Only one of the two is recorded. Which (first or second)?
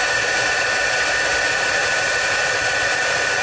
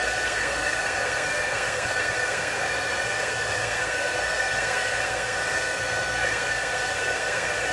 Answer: first